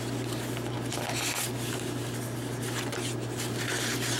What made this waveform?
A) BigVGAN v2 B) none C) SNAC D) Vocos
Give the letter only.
B